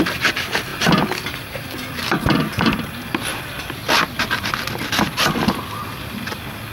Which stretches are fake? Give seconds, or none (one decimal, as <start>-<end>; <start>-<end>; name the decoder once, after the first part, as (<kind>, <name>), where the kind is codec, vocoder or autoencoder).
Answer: 2.0-2.7 (vocoder, BigVGAN v2)